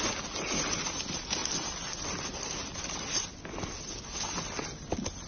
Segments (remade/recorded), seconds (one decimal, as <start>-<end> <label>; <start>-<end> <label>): 0.0-5.3 recorded